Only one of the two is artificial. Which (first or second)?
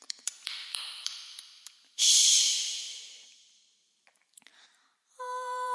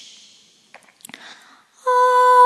first